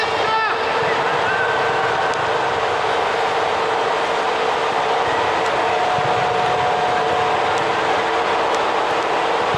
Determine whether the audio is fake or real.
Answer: real